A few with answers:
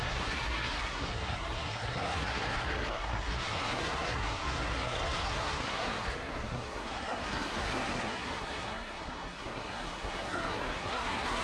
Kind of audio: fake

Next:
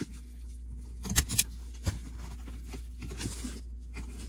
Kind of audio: real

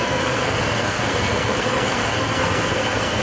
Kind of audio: fake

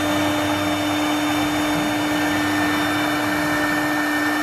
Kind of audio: real